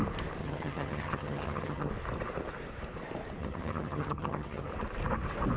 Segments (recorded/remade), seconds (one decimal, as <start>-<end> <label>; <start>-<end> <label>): 0.0-0.4 recorded; 0.4-1.9 remade; 1.9-3.4 recorded; 3.4-4.7 remade; 4.7-5.6 recorded